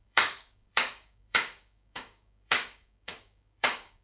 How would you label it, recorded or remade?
remade